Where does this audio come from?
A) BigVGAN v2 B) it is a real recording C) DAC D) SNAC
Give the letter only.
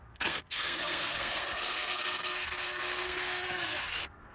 D